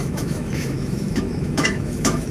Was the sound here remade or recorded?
remade